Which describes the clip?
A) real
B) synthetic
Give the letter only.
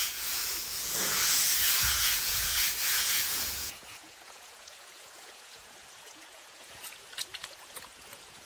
B